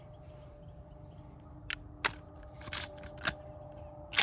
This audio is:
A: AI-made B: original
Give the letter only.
B